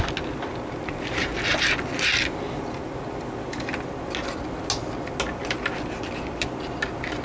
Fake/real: real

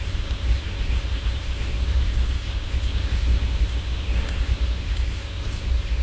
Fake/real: fake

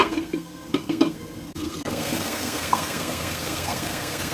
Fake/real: fake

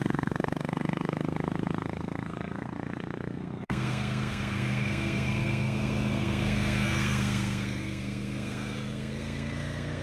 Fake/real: fake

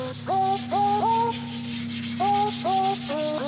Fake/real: real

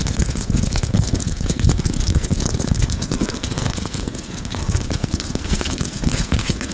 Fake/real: fake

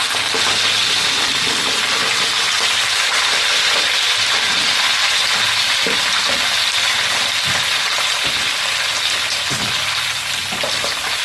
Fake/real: real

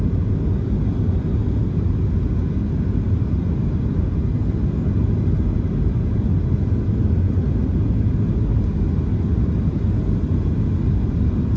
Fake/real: real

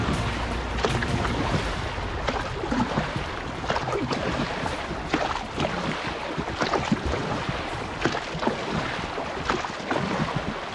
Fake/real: real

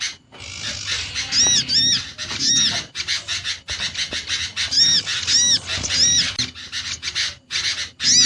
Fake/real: real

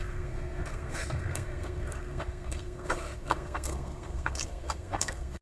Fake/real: fake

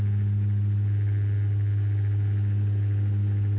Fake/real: real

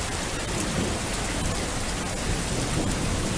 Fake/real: real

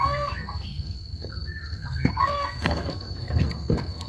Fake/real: fake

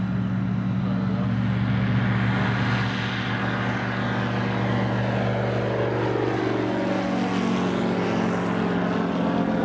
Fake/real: real